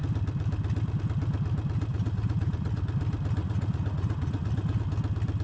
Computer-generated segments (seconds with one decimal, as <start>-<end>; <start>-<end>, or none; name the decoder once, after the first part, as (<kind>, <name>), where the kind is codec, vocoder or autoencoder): 1.9-2.8 (vocoder, Vocos); 3.4-4.8